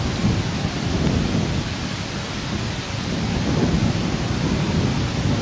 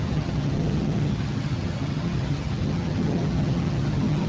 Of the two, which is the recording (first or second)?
first